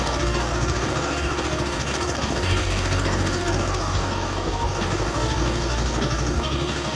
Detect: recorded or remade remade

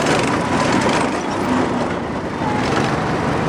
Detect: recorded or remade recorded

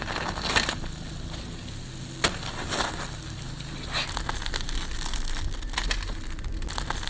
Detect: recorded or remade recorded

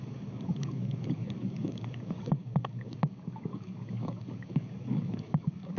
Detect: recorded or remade remade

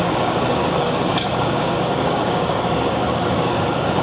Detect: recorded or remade remade